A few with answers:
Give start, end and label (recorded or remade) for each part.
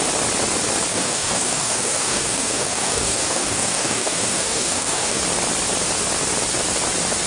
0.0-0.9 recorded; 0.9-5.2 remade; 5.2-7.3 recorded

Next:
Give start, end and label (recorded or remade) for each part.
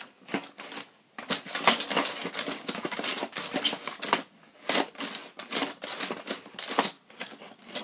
0.0-3.1 recorded; 3.1-4.9 remade; 4.9-7.8 recorded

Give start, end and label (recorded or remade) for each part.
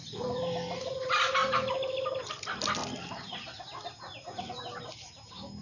0.0-5.6 recorded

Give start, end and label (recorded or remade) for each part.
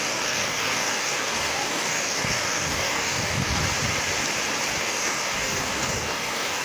0.0-3.6 remade; 3.6-4.8 recorded; 4.8-6.6 remade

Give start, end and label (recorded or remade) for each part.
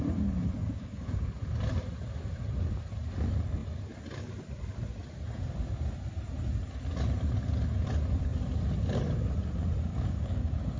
0.0-0.6 recorded; 0.6-1.1 remade; 1.1-9.9 recorded; 9.9-10.8 remade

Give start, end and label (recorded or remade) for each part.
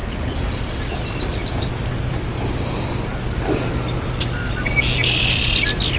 0.0-6.0 recorded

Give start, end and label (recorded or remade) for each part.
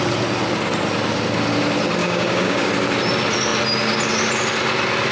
0.0-2.0 recorded; 2.0-2.7 remade; 2.7-5.1 recorded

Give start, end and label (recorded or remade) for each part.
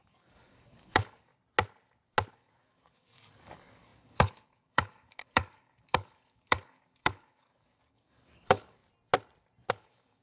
0.0-1.3 remade; 1.3-2.3 recorded; 2.3-8.8 remade; 8.8-9.7 recorded; 9.7-10.2 remade